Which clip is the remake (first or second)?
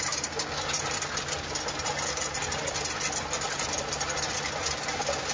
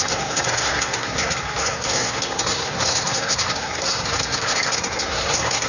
second